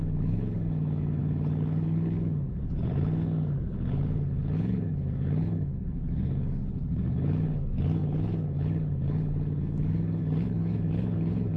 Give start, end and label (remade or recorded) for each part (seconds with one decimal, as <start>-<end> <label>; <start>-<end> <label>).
0.0-11.6 remade

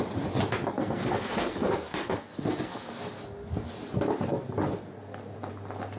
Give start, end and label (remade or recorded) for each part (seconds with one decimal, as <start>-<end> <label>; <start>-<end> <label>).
0.0-0.7 recorded; 0.7-2.9 remade; 2.9-6.0 recorded